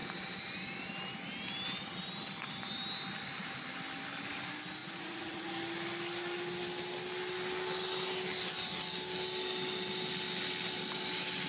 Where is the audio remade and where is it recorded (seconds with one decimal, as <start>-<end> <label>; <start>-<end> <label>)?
0.0-4.8 recorded; 4.8-5.5 remade; 5.5-11.5 recorded